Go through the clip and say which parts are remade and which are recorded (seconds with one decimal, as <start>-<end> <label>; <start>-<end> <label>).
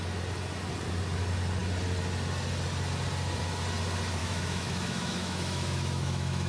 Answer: 0.0-4.2 recorded; 4.2-6.5 remade